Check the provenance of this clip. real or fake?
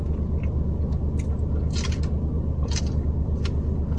real